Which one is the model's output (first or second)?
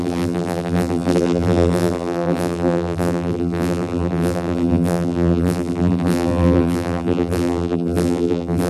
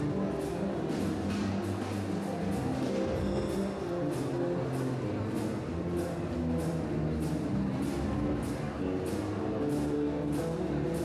first